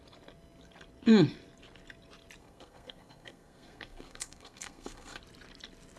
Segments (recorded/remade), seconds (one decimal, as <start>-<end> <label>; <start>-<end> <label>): 0.0-2.4 recorded; 2.4-5.2 remade; 5.2-6.0 recorded